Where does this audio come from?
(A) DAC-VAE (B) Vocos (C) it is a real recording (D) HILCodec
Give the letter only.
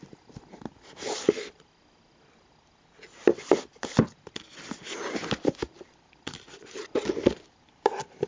C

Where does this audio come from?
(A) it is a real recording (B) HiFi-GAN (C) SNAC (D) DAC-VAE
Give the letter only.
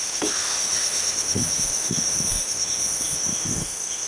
D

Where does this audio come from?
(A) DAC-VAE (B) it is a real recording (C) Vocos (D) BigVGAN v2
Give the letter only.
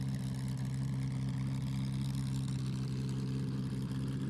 B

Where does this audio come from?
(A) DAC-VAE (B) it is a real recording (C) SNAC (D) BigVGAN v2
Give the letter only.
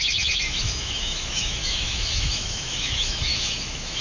A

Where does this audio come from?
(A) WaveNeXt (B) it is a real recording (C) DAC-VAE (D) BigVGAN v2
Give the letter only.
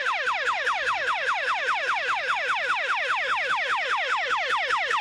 C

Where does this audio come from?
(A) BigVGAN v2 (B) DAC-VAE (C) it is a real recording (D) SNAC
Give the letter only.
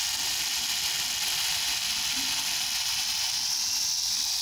C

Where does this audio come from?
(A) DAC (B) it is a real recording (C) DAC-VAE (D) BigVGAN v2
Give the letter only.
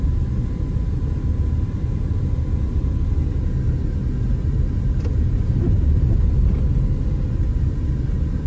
B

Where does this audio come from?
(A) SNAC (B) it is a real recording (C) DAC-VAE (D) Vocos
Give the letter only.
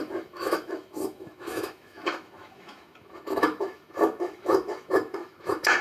C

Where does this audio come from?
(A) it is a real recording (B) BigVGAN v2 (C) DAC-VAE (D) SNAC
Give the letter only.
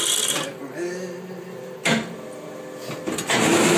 A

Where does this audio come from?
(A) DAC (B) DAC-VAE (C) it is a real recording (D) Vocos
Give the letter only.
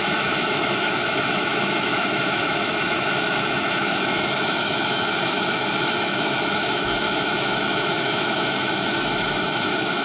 B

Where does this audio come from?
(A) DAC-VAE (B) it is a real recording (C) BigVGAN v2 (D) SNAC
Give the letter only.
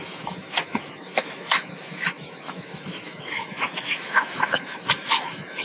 A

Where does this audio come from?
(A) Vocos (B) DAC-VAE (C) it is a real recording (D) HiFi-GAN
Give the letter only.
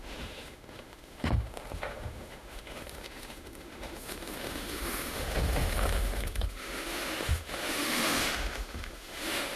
B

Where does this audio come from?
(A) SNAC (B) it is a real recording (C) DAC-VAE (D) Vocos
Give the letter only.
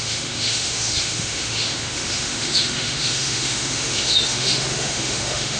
C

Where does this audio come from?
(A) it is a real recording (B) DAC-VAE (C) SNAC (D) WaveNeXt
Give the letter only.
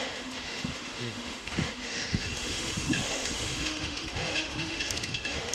B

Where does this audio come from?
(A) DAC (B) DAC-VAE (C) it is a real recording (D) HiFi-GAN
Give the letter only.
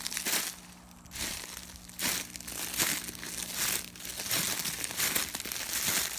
C